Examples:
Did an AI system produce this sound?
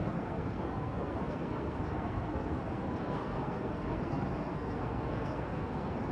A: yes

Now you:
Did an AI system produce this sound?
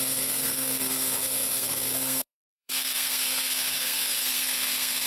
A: yes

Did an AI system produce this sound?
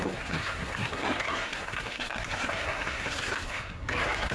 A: yes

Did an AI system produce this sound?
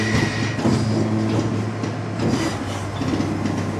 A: no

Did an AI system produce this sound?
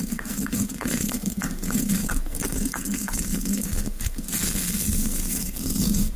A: yes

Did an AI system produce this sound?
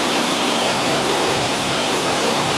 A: yes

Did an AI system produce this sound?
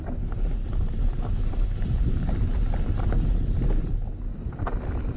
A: no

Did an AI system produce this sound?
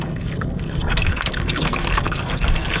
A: yes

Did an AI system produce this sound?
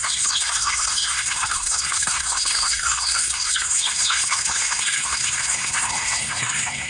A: yes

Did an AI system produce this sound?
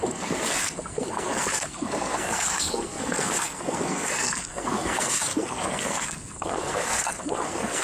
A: yes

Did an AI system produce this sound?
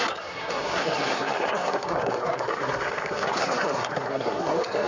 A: yes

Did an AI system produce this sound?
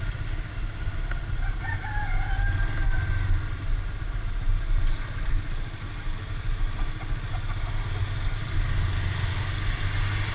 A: no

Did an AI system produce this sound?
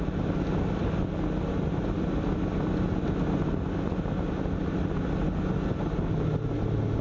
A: no